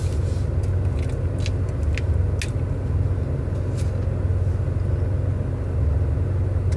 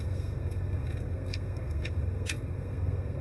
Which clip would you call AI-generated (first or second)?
second